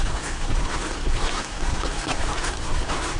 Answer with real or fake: fake